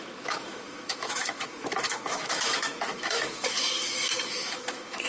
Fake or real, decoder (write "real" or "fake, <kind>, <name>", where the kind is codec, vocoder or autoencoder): fake, autoencoder, DAC-VAE